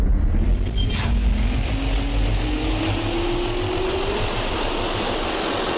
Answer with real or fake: real